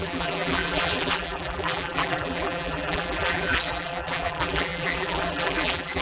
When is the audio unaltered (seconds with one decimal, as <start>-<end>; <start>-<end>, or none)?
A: none